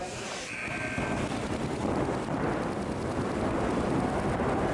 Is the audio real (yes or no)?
yes